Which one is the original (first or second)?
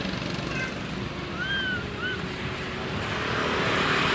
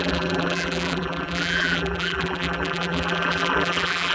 first